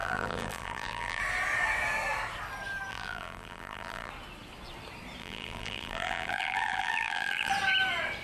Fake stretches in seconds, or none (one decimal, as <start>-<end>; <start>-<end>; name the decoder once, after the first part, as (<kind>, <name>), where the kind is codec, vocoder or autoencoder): 0.0-1.2 (vocoder, BigVGAN v2); 2.9-4.1; 5.2-7.5